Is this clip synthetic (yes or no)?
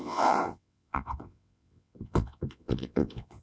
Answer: yes